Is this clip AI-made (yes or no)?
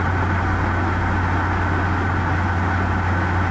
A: no